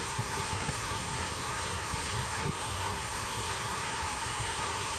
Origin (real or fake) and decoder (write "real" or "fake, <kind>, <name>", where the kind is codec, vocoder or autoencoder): fake, codec, SNAC